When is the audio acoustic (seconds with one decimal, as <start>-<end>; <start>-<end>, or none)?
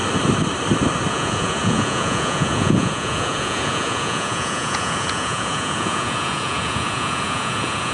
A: 0.0-1.1